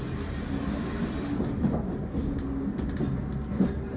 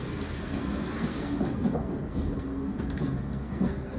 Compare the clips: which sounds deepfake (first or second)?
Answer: second